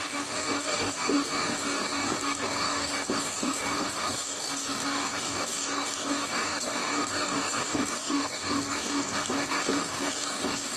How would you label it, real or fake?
fake